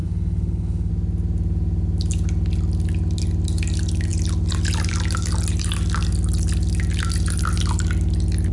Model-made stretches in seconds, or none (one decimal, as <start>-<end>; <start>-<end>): 0.0-0.9